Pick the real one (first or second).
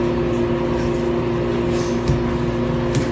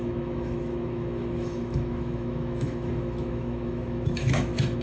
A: first